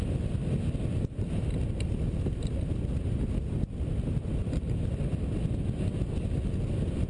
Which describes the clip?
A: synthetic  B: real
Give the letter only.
B